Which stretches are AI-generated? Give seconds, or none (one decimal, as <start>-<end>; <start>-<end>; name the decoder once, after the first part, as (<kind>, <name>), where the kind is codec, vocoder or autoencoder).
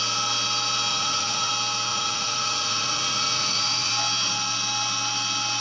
0.9-1.5 (vocoder, Vocos); 1.9-3.9